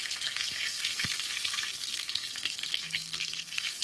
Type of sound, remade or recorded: remade